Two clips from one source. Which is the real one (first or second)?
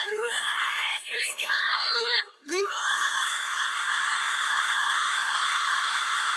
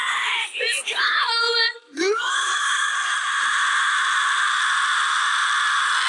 second